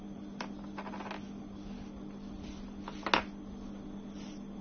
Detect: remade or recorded recorded